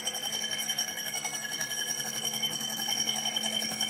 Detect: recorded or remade remade